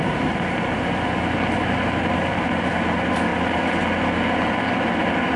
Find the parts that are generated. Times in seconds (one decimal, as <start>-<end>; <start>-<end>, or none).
none